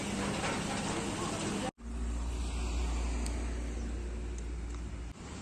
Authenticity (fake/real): real